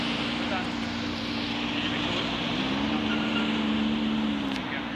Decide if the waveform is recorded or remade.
recorded